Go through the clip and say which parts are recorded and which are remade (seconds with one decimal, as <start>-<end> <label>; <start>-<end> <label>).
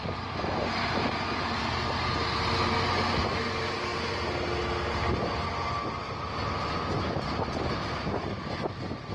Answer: 0.0-9.1 recorded